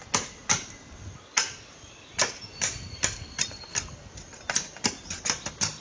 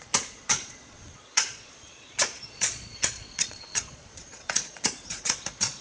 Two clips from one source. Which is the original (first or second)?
first